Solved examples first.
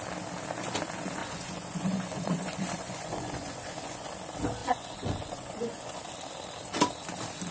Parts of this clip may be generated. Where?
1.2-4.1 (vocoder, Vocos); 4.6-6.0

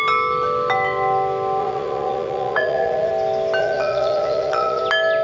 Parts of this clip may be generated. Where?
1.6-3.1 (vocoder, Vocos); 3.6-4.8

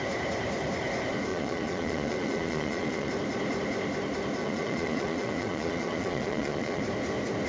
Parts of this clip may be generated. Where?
1.3-3.1 (vocoder, Vocos); 4.4-6.8

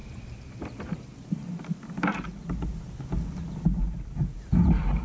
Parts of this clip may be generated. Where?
none

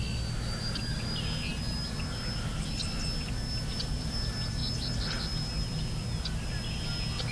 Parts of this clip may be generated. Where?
none